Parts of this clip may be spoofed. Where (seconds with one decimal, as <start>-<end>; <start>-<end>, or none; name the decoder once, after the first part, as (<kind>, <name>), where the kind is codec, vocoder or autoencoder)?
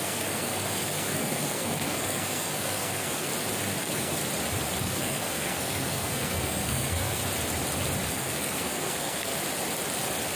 0.0-3.3 (codec, SNAC); 3.8-4.2; 4.8-7.2; 8.1-9.3